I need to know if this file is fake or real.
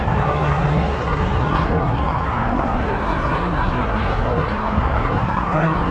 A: fake